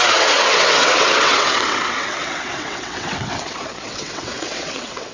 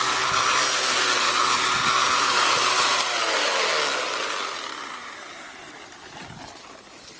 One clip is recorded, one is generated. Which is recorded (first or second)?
second